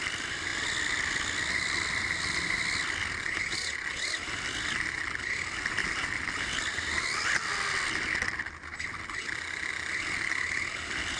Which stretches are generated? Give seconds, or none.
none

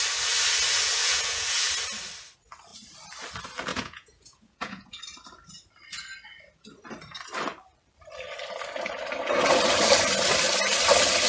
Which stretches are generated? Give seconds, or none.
1.0-1.7 (vocoder, Vocos); 3.7-5.0

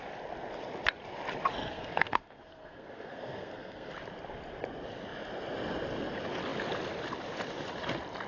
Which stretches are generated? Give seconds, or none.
1.7-3.9 (codec, SNAC)

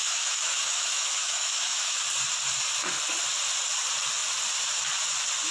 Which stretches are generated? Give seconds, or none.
0.0-2.0 (autoencoder, DAC-VAE)

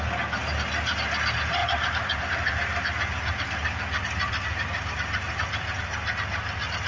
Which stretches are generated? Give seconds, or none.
none